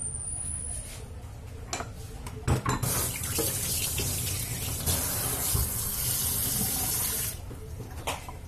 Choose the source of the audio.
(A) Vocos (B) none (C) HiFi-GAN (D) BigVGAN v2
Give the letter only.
B